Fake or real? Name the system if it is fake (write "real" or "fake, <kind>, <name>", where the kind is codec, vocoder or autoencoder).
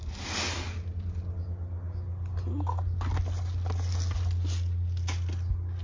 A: real